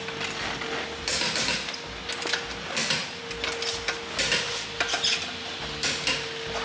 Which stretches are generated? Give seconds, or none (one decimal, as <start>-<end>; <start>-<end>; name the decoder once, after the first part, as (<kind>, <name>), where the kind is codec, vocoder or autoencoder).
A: none